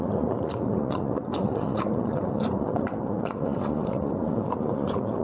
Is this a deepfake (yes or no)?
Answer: yes